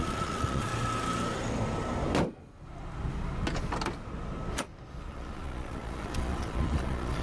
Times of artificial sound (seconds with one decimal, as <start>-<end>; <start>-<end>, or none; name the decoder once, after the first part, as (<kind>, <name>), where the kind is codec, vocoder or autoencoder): 0.0-0.7 (vocoder, Vocos); 5.0-7.2